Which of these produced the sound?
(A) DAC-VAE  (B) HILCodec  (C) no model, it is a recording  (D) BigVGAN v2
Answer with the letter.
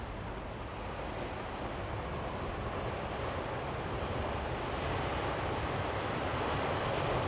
C